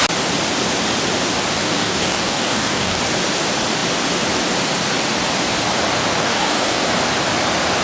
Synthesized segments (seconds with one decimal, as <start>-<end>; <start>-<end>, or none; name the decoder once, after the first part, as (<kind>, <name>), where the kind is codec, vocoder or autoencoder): 1.5-3.0 (codec, DAC); 6.2-6.9